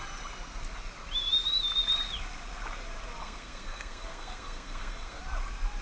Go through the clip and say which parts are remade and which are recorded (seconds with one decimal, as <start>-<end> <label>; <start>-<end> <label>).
0.0-3.2 recorded; 3.2-5.2 remade; 5.2-5.8 recorded